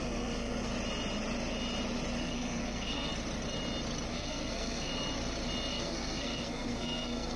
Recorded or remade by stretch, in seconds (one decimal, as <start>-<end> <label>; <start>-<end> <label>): 0.0-0.7 remade; 0.7-2.2 recorded; 2.2-3.1 remade; 3.1-4.1 recorded; 4.1-4.9 remade; 4.9-5.7 recorded; 5.7-7.4 remade